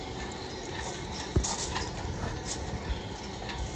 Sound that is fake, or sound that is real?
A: real